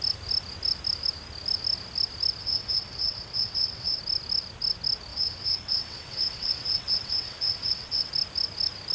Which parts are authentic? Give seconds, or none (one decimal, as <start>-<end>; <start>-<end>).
0.0-2.4; 4.0-5.1; 8.1-8.9